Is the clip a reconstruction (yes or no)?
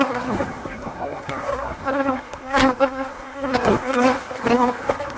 yes